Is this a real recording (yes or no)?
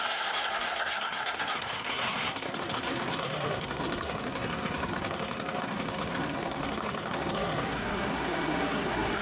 no